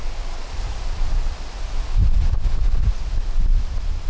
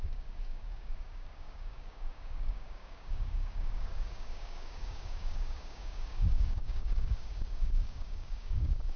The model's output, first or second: second